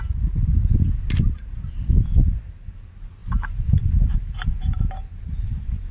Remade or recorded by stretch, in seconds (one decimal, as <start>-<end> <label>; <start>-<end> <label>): 0.0-5.9 recorded